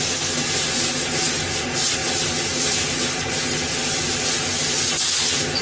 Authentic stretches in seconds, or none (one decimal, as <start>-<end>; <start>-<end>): 0.0-5.6